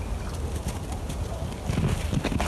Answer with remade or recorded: recorded